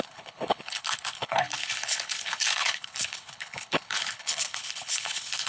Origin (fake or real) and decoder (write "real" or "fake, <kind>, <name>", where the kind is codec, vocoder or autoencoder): fake, codec, HILCodec